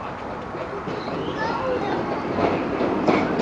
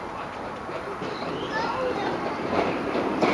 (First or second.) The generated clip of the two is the second